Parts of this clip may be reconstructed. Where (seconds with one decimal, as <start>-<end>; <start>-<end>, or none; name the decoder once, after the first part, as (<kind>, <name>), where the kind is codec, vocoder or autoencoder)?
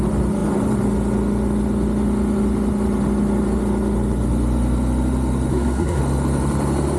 5.5-6.0 (codec, SNAC)